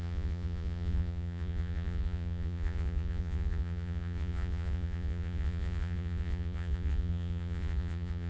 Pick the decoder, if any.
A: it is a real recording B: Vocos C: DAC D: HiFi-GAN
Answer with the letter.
B